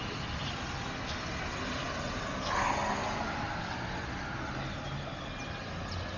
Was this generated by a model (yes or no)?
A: no